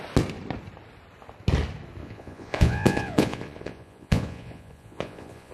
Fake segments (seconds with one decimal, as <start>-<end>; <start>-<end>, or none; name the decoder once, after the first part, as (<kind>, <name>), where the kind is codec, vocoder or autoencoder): 2.0-5.5 (vocoder, Vocos)